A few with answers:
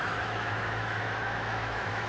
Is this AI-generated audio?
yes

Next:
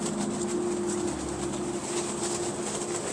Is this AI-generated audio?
no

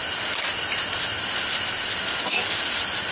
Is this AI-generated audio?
no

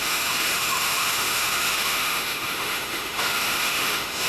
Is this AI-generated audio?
yes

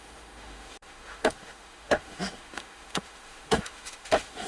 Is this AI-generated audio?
yes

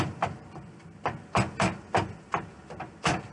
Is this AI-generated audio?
no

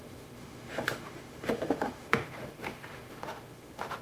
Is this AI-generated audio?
yes